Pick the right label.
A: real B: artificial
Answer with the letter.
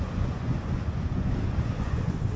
B